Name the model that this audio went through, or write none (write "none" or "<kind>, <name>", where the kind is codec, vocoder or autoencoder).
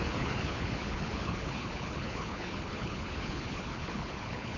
codec, HILCodec